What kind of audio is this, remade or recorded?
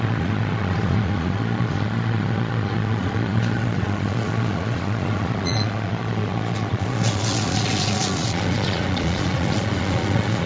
remade